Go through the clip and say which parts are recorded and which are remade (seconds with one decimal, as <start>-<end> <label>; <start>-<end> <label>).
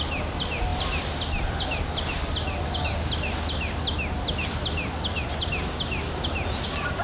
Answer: 0.0-7.0 recorded